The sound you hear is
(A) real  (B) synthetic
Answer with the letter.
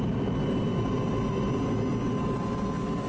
A